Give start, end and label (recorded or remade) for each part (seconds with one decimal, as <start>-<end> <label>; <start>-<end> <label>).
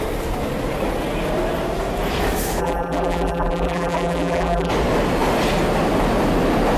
0.0-2.6 recorded; 2.6-4.7 remade; 4.7-6.8 recorded